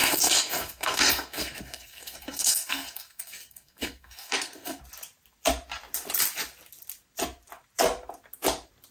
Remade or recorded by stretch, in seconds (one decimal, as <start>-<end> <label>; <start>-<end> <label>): 0.0-4.8 remade; 4.8-8.9 recorded